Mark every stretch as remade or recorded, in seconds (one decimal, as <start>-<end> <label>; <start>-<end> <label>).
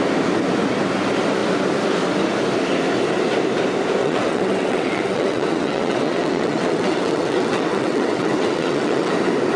0.0-4.0 recorded; 4.0-9.1 remade; 9.1-9.6 recorded